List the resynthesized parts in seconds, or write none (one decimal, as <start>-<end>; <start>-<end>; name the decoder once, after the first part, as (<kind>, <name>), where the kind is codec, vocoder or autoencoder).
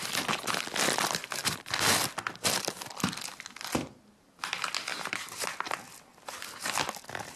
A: none